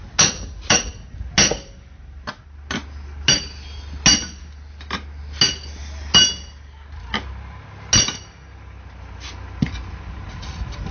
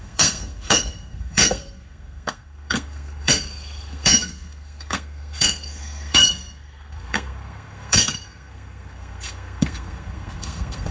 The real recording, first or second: first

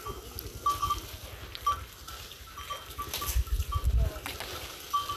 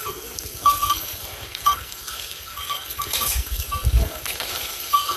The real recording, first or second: first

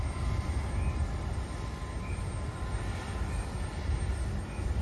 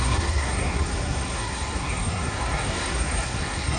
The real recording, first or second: first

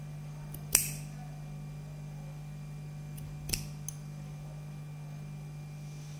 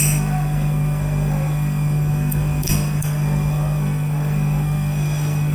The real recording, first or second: first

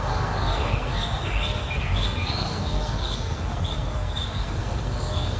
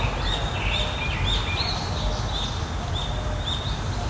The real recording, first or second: second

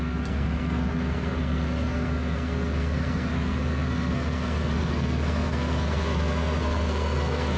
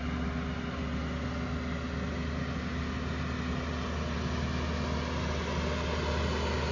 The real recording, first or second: second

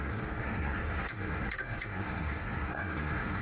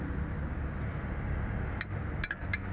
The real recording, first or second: second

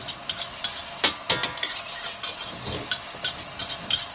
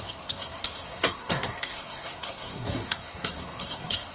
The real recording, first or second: first